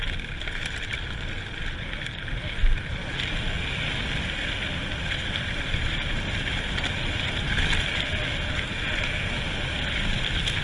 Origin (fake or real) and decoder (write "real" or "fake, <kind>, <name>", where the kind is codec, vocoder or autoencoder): real